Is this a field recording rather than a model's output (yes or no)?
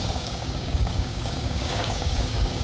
no